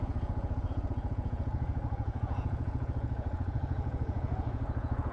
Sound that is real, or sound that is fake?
fake